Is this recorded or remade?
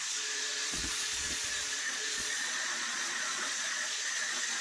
remade